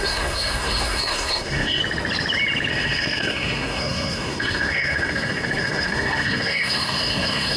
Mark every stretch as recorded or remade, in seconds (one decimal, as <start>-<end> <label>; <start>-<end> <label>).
0.0-1.8 remade; 1.8-2.7 recorded; 2.7-7.6 remade